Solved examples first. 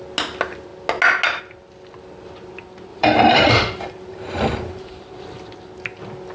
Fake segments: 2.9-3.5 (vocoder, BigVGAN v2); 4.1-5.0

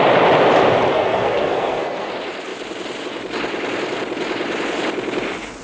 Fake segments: 0.9-2.1 (codec, SNAC)

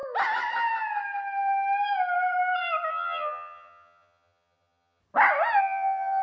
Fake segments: 2.9-5.0 (vocoder, HiFi-GAN); 5.6-6.2

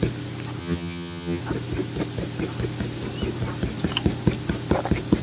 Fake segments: 0.6-1.4 (vocoder, HiFi-GAN)